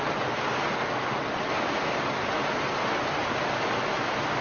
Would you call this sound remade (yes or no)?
no